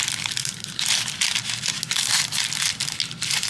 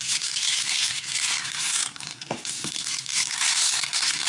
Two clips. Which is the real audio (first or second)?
first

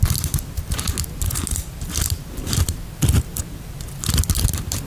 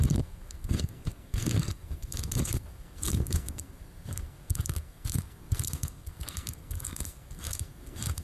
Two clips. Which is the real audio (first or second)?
first